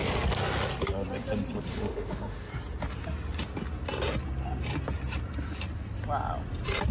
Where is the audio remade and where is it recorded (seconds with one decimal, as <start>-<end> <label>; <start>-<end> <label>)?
0.0-1.7 recorded; 1.7-2.5 remade; 2.5-6.9 recorded